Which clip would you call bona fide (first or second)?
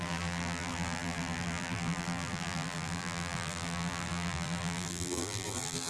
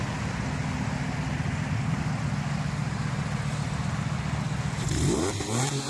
second